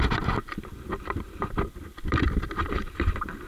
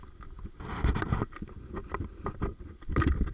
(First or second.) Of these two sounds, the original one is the second